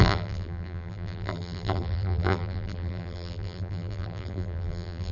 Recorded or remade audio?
remade